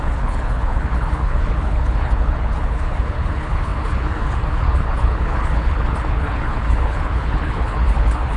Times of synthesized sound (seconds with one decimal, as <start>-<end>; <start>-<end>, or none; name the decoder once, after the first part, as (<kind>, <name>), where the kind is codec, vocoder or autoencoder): 0.0-8.4 (codec, HILCodec)